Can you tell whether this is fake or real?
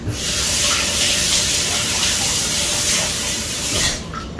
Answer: fake